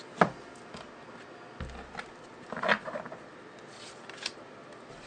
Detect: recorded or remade recorded